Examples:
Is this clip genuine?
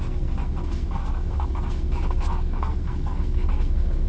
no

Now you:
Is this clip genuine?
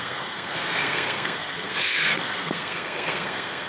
no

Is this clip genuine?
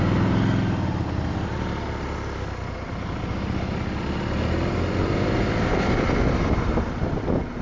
yes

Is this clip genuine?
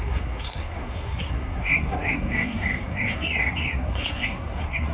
no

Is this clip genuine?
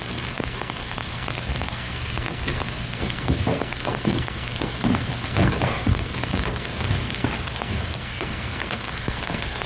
no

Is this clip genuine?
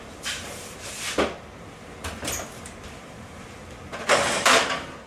no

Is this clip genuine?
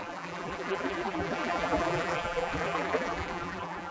no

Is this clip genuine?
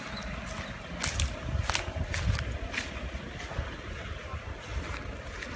yes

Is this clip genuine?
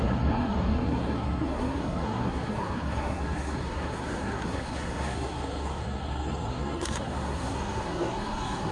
no